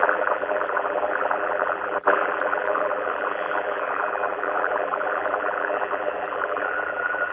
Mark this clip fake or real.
fake